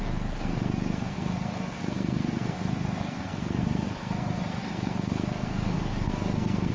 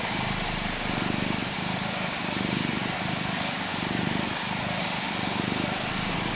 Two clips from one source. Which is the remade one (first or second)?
first